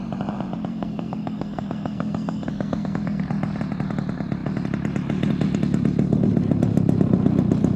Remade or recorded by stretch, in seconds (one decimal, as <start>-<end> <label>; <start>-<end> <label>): 0.0-0.7 recorded; 0.7-3.2 remade; 3.2-7.8 recorded